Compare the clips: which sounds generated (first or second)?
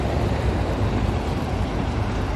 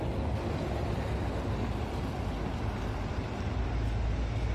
first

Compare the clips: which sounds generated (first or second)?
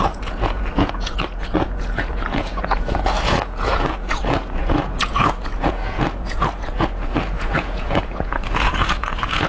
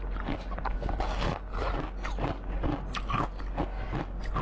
first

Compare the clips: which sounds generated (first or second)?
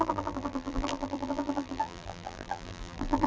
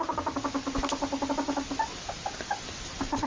first